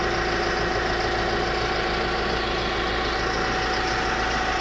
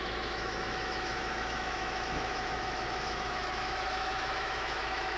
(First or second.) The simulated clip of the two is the second